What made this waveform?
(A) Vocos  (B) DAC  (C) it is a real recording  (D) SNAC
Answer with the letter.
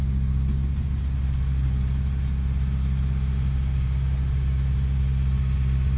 C